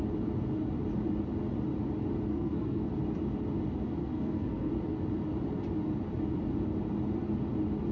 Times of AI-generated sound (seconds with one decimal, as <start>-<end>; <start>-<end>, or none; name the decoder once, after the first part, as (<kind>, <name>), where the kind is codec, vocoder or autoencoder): 2.3-2.9 (codec, SNAC); 4.0-4.7